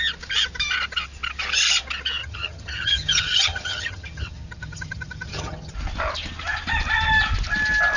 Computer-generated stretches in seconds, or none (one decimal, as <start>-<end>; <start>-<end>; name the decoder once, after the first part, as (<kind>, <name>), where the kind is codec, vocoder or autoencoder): 2.2-5.7 (vocoder, HiFi-GAN)